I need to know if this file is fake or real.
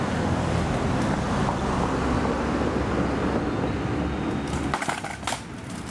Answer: real